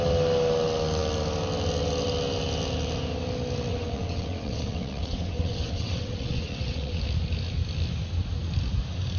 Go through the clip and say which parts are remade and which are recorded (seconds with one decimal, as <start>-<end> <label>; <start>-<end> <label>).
0.0-3.7 recorded; 3.7-7.0 remade; 7.0-9.2 recorded